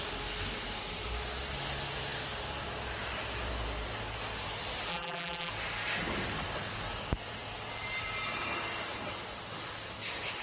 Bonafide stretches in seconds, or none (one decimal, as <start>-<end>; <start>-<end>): 0.0-4.9; 5.5-10.4

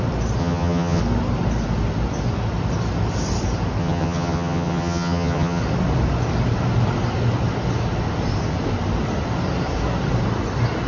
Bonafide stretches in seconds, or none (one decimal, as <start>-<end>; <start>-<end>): 0.0-0.4; 1.0-3.8; 5.6-10.9

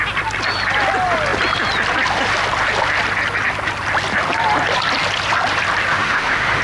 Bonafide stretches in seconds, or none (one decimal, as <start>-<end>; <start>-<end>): 0.0-5.9

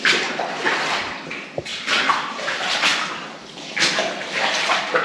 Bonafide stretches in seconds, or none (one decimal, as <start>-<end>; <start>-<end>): 1.7-2.3

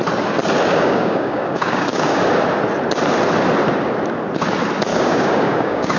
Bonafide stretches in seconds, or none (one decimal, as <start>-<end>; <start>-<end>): 0.0-0.7; 2.2-4.9

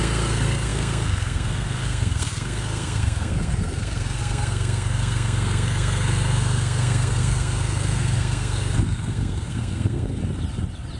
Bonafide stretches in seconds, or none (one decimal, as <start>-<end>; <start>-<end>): 10.2-11.0

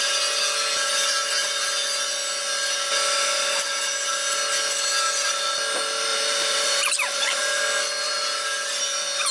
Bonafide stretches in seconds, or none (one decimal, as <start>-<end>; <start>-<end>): 0.0-6.1; 7.6-9.3

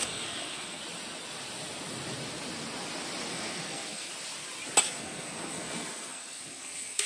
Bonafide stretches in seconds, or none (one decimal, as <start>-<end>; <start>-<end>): 0.8-3.3; 4.1-4.8